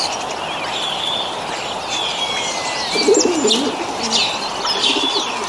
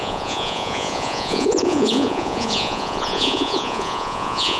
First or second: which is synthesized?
second